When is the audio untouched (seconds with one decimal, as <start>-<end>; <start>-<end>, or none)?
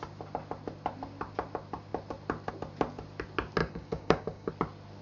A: 0.0-3.6; 4.5-5.0